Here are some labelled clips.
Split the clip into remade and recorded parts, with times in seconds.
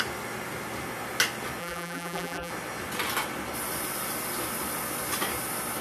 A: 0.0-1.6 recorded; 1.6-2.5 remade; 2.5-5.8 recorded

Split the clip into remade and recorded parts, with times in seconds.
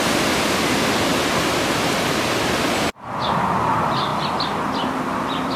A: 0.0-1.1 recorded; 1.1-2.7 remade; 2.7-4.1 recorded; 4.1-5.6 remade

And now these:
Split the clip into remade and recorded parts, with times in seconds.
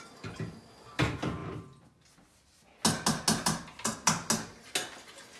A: 0.0-5.4 recorded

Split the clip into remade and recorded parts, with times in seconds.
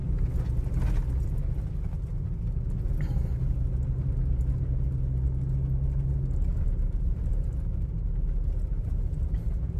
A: 0.0-6.5 recorded; 6.5-7.3 remade; 7.3-9.8 recorded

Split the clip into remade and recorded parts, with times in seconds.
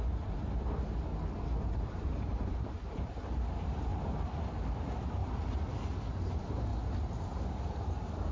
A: 0.0-3.9 remade; 3.9-4.7 recorded; 4.7-5.2 remade; 5.2-6.3 recorded; 6.3-6.7 remade; 6.7-7.2 recorded; 7.2-8.3 remade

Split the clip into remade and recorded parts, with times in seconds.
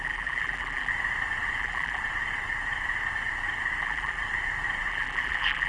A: 0.0-0.9 remade; 0.9-1.6 recorded; 1.6-2.0 remade; 2.0-3.8 recorded; 3.8-4.2 remade; 4.2-4.9 recorded; 4.9-5.7 remade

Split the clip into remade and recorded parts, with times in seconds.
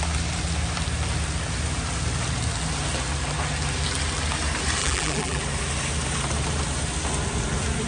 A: 0.0-4.8 recorded; 4.8-5.4 remade; 5.4-7.9 recorded